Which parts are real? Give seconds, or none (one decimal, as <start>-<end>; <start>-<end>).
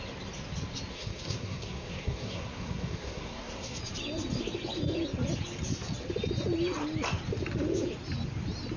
0.0-0.9; 3.8-8.8